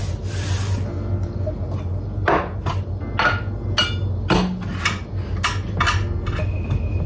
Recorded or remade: recorded